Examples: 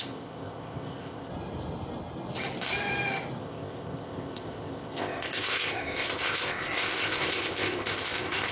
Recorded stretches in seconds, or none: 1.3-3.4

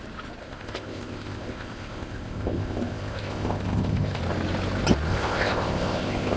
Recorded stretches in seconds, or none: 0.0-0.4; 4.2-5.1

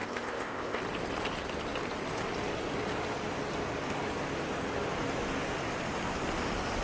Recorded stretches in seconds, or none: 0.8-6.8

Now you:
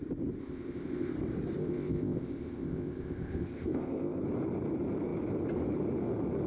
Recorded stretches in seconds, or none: 0.0-0.4; 1.1-1.6; 4.2-6.5

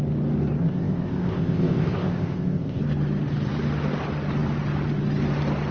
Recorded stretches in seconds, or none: 0.0-0.6; 2.8-5.7

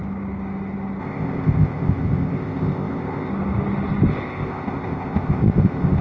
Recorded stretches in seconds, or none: 0.0-1.0; 3.3-4.1

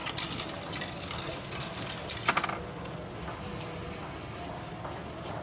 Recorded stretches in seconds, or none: 0.0-5.4